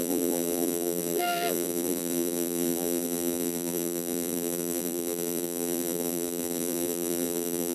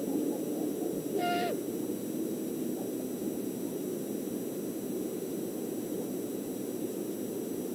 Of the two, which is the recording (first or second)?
second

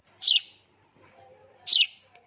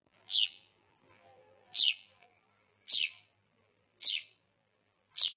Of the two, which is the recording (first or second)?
first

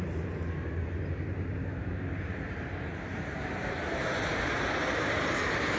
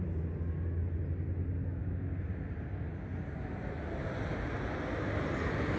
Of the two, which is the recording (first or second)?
second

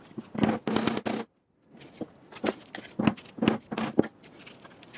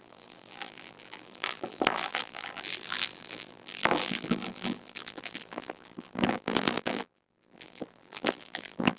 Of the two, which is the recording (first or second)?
first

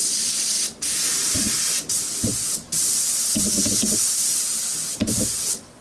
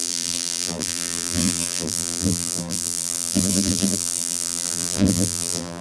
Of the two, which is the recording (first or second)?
first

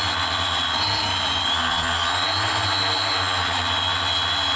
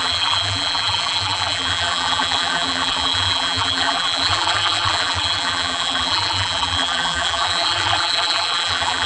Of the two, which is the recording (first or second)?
first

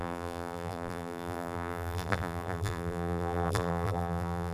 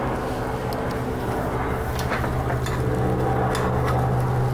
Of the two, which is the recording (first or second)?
second